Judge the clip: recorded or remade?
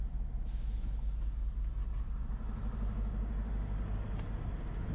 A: recorded